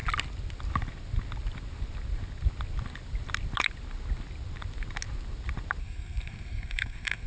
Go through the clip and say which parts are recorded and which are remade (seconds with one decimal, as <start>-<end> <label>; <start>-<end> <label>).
0.0-5.8 recorded; 5.8-7.3 remade